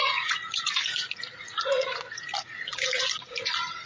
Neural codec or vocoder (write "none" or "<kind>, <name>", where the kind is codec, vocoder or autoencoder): vocoder, Vocos